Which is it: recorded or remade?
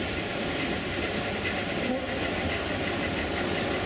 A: recorded